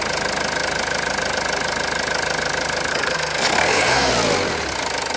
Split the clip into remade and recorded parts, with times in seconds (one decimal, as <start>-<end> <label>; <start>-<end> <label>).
0.0-2.9 recorded; 2.9-4.1 remade; 4.1-5.2 recorded